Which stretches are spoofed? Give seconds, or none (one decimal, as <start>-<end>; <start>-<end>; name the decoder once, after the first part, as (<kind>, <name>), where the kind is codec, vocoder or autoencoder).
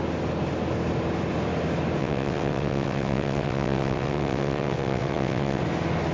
2.0-5.6 (vocoder, WaveNeXt)